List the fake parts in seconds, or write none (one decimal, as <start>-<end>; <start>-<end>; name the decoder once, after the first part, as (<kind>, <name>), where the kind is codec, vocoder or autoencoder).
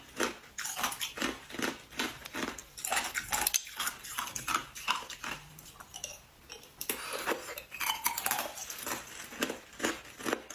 none